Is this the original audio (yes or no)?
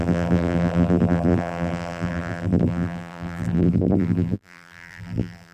no